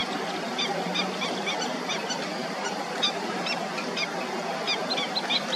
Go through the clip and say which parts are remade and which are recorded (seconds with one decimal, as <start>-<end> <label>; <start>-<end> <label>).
0.0-5.6 recorded